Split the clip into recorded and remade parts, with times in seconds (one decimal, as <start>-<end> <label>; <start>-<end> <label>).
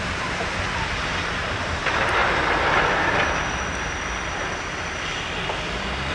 0.0-2.2 remade; 2.2-6.1 recorded